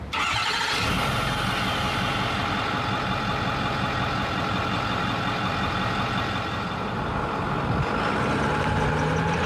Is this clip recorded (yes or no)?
yes